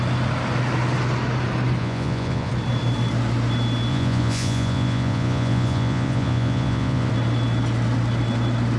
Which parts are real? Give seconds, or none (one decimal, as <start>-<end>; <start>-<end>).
0.0-1.8; 2.5-3.9; 7.1-8.8